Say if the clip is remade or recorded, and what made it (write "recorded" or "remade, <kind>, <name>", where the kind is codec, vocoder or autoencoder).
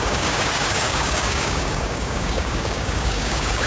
remade, codec, DAC